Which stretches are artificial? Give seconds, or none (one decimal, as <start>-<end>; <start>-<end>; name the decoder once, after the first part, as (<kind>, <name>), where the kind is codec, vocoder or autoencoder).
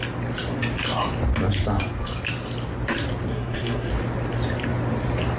3.3-3.9 (codec, SNAC)